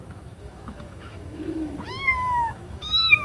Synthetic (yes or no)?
yes